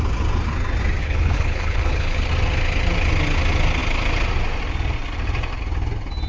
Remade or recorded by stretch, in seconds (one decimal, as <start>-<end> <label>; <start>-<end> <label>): 0.0-1.0 recorded; 1.0-2.3 remade; 2.3-6.3 recorded